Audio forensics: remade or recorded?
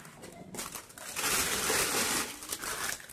recorded